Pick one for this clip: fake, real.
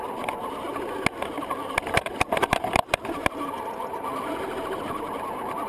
real